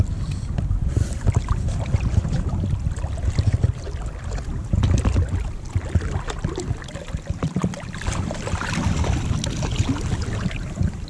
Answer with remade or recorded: recorded